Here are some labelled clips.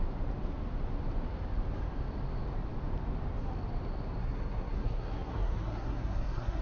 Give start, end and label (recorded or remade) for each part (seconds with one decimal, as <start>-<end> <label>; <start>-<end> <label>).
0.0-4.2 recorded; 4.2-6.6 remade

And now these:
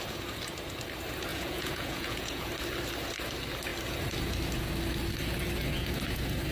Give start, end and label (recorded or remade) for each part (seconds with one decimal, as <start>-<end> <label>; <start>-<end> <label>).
0.0-1.3 recorded; 1.3-2.5 remade; 2.5-6.5 recorded

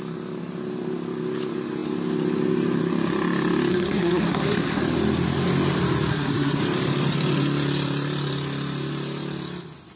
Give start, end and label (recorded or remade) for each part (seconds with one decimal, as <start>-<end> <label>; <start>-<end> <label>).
0.0-3.7 recorded; 3.7-4.8 remade; 4.8-6.1 recorded; 6.1-6.6 remade; 6.6-10.0 recorded

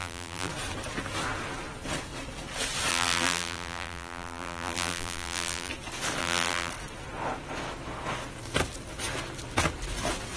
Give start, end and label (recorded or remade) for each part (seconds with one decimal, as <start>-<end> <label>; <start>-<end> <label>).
0.0-0.5 remade; 0.5-2.9 recorded; 2.9-5.7 remade; 5.7-6.2 recorded; 6.2-6.7 remade; 6.7-10.4 recorded